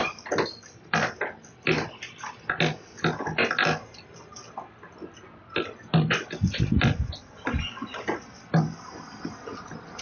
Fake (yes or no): no